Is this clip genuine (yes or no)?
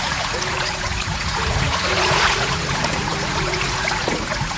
no